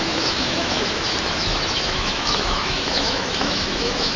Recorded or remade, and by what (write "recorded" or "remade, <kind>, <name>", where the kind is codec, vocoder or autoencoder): remade, autoencoder, DAC-VAE